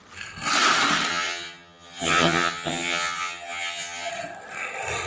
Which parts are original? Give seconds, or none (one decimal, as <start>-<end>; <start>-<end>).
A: 0.0-1.1; 4.1-5.1